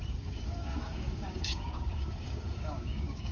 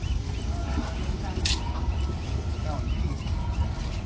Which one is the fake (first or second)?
first